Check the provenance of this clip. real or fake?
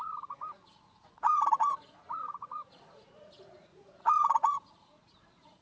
fake